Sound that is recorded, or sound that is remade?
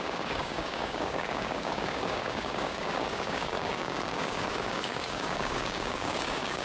remade